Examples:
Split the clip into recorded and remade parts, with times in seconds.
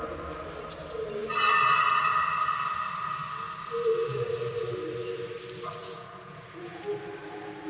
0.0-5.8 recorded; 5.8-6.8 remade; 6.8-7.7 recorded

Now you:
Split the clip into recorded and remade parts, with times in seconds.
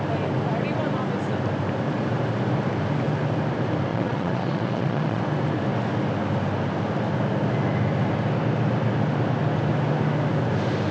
0.0-3.9 recorded; 3.9-5.2 remade; 5.2-10.9 recorded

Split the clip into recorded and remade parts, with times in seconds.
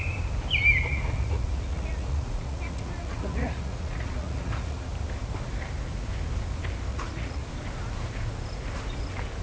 0.0-0.9 recorded; 0.9-4.9 remade; 4.9-6.9 recorded; 6.9-7.5 remade; 7.5-9.4 recorded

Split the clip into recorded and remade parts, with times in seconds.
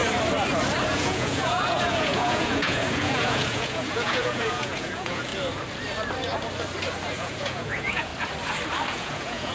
0.0-0.9 recorded; 0.9-5.3 remade; 5.3-7.1 recorded; 7.1-8.1 remade; 8.1-8.9 recorded; 8.9-9.5 remade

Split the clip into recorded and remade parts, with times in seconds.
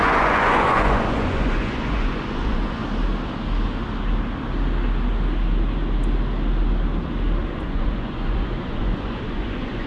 0.0-2.8 remade; 2.8-7.5 recorded; 7.5-9.9 remade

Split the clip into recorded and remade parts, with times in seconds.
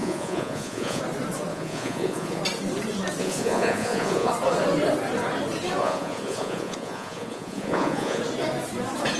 0.0-1.0 remade; 1.0-1.5 recorded; 1.5-2.4 remade; 2.4-3.2 recorded; 3.2-4.3 remade; 4.3-5.8 recorded; 5.8-8.2 remade; 8.2-9.2 recorded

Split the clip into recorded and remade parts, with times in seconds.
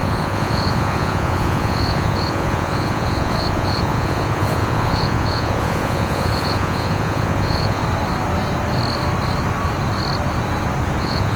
0.0-7.8 remade; 7.8-11.0 recorded; 11.0-11.4 remade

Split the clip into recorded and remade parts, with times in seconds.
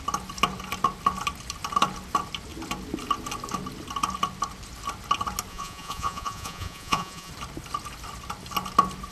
0.0-5.5 recorded; 5.5-7.3 remade; 7.3-9.1 recorded